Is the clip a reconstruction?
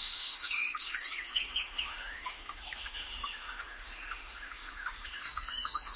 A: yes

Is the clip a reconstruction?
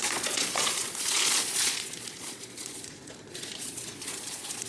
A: yes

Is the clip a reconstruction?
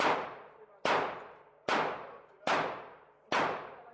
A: no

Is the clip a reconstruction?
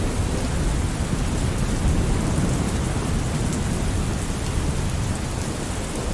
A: no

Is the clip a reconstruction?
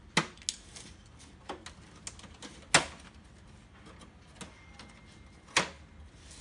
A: no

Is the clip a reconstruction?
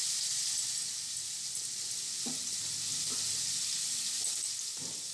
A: no